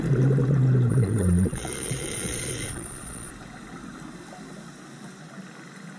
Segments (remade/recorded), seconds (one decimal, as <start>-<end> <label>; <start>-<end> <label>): 0.0-0.9 recorded; 0.9-3.3 remade; 3.3-6.0 recorded